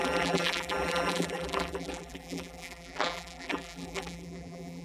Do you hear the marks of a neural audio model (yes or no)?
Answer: yes